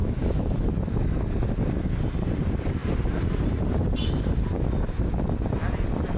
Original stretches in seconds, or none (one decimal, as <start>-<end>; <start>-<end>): 1.2-6.2